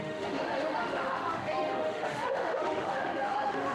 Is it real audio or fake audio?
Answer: fake